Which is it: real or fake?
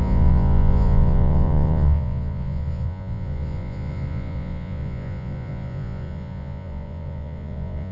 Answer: fake